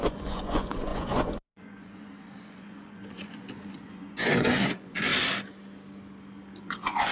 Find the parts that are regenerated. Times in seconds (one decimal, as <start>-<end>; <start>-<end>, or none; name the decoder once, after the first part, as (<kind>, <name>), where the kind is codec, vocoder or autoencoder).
0.0-5.1 (vocoder, Vocos); 6.6-7.1